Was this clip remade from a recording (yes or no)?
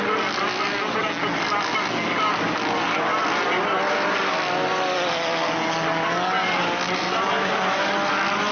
no